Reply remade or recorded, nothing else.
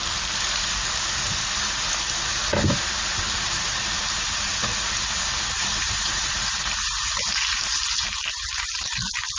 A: recorded